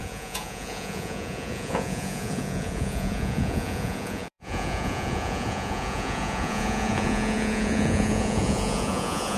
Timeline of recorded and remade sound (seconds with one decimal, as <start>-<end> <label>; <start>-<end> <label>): 0.0-9.4 remade

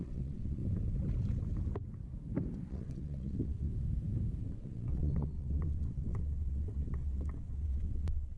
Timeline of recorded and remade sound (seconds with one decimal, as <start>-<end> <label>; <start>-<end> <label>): 0.0-0.6 remade; 0.6-2.7 recorded; 2.7-3.7 remade; 3.7-4.4 recorded; 4.4-8.4 remade

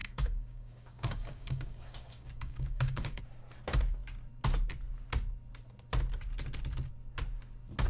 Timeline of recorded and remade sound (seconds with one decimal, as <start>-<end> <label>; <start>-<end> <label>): 0.0-3.2 remade; 3.2-7.9 recorded

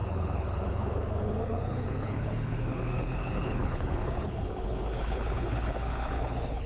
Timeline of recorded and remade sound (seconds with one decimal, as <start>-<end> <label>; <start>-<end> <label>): 0.0-6.7 remade

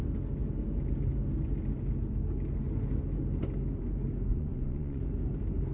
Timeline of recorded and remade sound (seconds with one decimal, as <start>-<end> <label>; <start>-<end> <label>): 0.0-4.3 recorded; 4.3-5.0 remade; 5.0-5.7 recorded